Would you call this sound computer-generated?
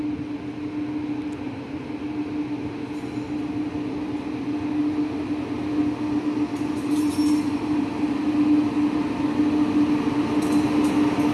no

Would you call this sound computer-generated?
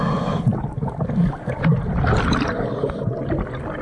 no